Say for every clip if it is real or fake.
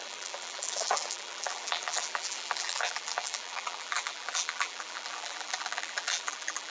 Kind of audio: fake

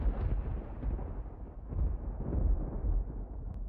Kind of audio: real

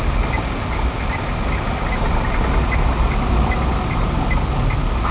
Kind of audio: real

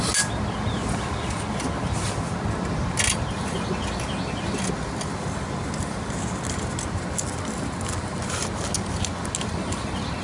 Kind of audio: real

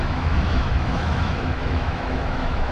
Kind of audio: fake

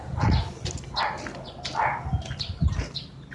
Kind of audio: real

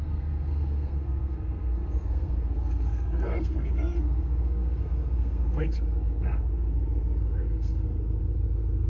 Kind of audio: fake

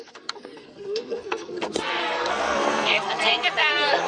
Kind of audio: fake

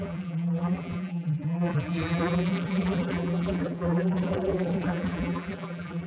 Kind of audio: fake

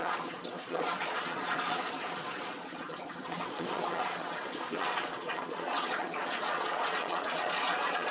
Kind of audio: fake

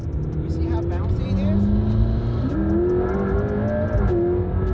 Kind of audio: real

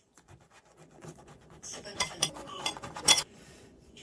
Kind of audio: fake